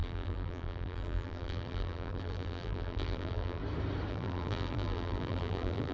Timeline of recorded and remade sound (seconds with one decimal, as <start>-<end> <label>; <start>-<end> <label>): 0.0-3.6 remade; 3.6-4.1 recorded; 4.1-5.9 remade